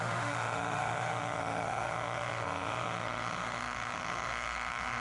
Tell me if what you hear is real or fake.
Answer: fake